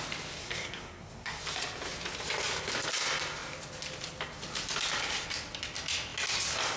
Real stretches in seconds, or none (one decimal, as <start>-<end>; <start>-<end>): 0.0-0.4; 1.4-6.8